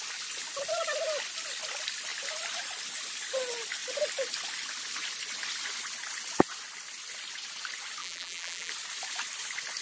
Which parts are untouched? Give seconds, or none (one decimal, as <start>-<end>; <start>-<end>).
0.0-8.0; 8.7-9.8

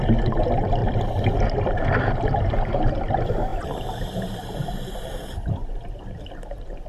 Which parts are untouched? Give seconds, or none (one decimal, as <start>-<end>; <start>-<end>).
0.0-0.8; 1.7-3.5; 6.2-6.9

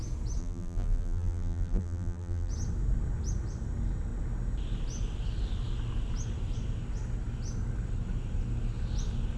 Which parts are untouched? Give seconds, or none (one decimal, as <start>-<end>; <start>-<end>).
0.0-0.4; 2.5-9.4

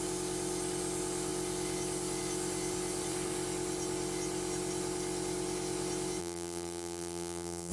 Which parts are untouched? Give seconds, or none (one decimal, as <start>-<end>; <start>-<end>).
0.0-6.2

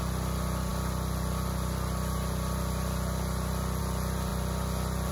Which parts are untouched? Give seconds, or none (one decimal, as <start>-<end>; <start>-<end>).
0.0-5.1

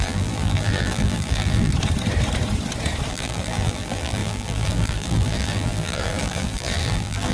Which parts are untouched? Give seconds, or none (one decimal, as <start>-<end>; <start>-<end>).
1.7-3.1

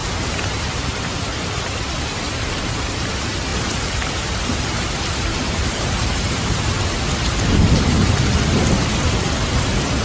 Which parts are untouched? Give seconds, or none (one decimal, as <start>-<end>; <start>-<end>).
1.5-3.5; 8.1-10.0